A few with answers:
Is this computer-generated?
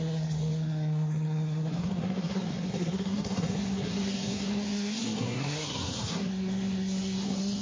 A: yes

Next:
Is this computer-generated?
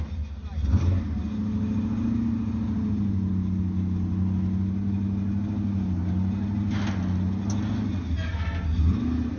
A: no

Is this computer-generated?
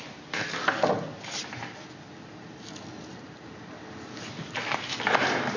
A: no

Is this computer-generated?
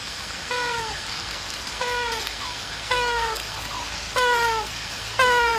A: yes